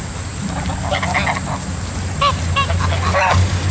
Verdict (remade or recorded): recorded